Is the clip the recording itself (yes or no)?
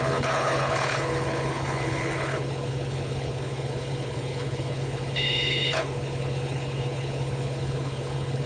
no